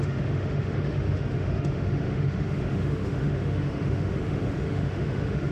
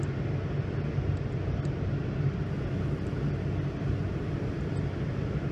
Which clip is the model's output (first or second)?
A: first